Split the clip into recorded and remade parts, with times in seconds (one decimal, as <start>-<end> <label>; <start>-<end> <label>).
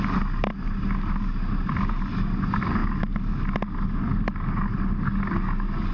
0.0-5.9 recorded